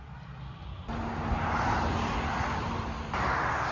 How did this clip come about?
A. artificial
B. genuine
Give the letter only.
B